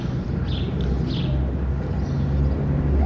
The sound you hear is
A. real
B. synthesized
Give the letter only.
A